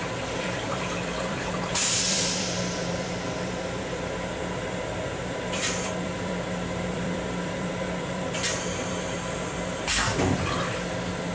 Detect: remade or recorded remade